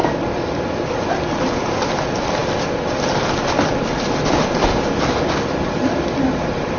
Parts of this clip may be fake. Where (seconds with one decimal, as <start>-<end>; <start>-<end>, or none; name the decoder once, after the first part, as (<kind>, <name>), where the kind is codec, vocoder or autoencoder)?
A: none